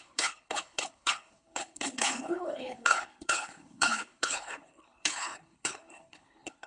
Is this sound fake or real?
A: fake